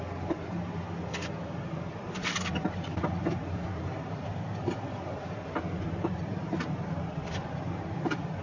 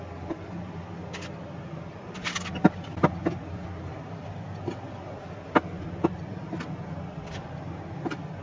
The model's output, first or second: first